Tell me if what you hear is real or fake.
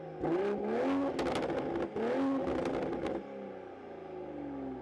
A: real